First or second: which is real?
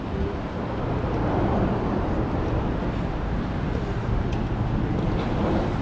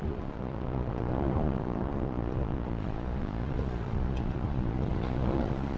first